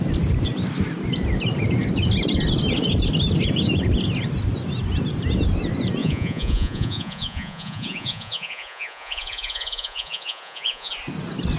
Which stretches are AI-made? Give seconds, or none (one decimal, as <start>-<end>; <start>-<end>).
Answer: 6.0-10.9